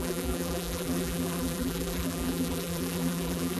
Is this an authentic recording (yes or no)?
no